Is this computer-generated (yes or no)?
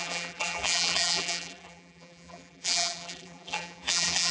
yes